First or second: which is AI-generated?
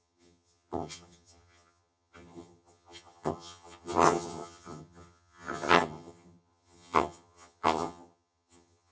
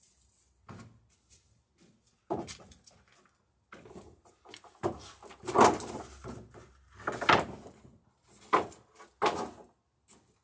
first